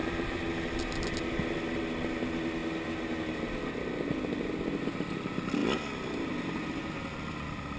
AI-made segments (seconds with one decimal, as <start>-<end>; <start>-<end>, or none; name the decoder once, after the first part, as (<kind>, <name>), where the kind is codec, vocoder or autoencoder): none